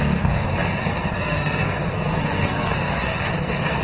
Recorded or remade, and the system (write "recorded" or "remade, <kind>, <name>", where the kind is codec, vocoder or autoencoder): remade, codec, SNAC